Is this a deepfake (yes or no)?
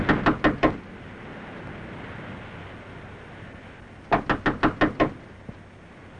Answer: no